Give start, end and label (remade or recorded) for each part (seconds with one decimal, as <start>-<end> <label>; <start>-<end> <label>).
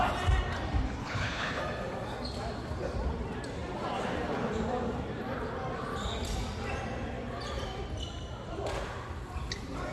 0.0-1.0 recorded; 1.0-1.6 remade; 1.6-9.9 recorded